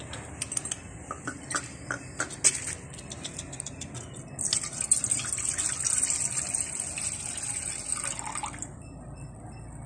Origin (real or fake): real